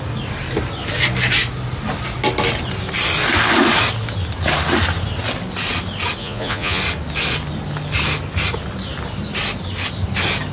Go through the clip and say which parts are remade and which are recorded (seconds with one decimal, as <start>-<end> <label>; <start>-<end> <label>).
0.0-6.2 recorded; 6.2-6.8 remade; 6.8-10.5 recorded